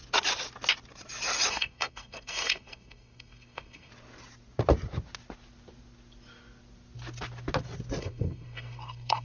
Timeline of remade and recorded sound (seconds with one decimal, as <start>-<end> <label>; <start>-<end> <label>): 0.0-1.5 recorded; 1.5-3.9 remade; 3.9-8.0 recorded; 8.0-9.2 remade